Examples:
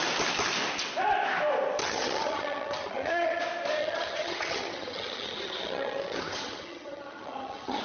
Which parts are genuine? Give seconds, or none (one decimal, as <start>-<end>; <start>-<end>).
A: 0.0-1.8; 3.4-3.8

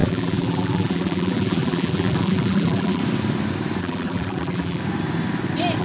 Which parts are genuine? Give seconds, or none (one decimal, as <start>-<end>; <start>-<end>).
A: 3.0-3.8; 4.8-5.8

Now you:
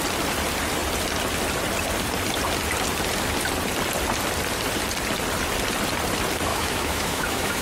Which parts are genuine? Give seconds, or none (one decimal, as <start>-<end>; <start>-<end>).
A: 0.0-6.5